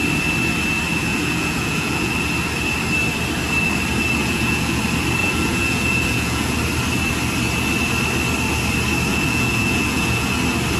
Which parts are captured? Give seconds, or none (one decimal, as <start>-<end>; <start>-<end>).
0.0-1.1; 2.1-4.2; 4.8-5.2; 6.6-9.1; 10.3-10.8